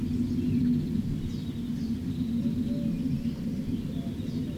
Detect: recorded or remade recorded